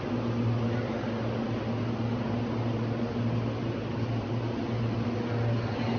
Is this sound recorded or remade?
recorded